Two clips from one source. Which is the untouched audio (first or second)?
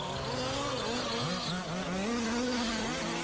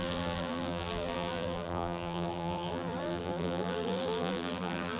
first